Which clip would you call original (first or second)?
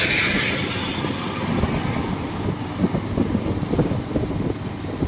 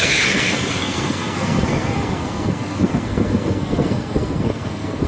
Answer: first